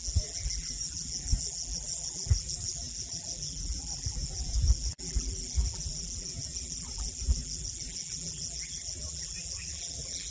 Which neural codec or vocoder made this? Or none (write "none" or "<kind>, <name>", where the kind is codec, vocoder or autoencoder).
vocoder, BigVGAN v2